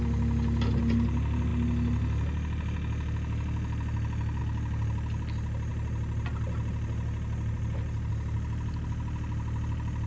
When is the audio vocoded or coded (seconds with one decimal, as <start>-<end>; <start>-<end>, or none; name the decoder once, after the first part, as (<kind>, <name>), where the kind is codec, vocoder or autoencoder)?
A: none

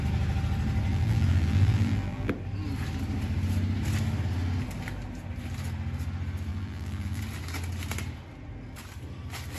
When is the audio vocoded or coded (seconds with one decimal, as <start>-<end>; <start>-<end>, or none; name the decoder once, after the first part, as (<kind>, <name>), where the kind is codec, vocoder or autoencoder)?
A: 0.9-2.3 (vocoder, BigVGAN v2); 6.5-7.2

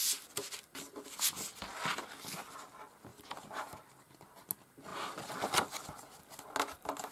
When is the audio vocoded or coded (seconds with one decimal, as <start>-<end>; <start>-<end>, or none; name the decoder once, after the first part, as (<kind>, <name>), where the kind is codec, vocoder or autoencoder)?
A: none

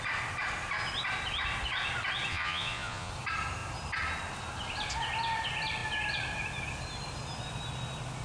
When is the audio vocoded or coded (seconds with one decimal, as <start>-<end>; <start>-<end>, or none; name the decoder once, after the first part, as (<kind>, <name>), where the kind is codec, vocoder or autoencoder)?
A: 2.3-3.1 (vocoder, Vocos)

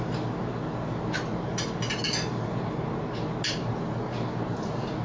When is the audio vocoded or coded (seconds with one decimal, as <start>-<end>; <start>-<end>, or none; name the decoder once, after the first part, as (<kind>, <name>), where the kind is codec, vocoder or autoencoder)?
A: none

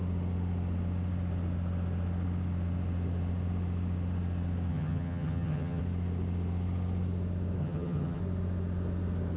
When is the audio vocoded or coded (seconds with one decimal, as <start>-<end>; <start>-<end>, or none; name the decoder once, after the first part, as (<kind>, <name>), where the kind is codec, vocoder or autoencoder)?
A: 4.7-5.8 (vocoder, HiFi-GAN); 7.6-8.2